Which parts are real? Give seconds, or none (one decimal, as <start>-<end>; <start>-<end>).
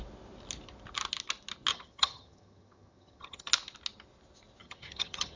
0.0-1.7; 3.5-4.6